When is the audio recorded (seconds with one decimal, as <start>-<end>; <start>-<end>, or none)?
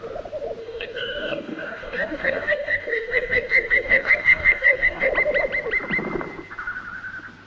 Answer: 0.0-0.6; 5.1-7.5